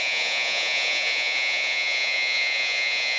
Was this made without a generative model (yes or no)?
no